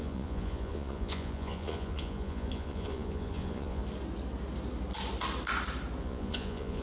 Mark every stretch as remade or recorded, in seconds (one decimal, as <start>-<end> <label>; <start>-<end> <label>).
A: 0.0-3.8 remade; 3.8-6.0 recorded; 6.0-6.8 remade